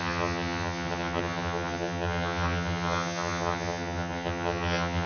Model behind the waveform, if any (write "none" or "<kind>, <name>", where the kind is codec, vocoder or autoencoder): vocoder, HiFi-GAN